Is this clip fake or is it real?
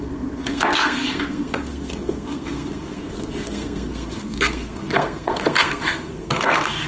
fake